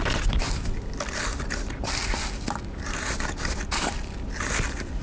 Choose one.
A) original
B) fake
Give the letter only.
A